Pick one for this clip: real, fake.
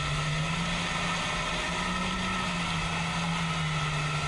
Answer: real